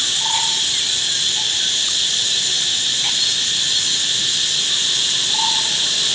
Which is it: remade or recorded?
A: recorded